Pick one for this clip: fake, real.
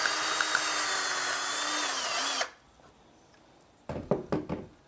real